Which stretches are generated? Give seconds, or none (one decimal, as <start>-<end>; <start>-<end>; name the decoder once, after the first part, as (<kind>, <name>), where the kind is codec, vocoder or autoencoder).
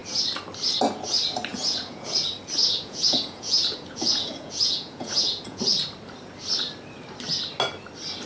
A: 1.5-2.1 (vocoder, Vocos); 2.6-5.6